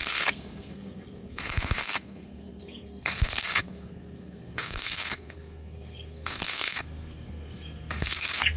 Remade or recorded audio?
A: remade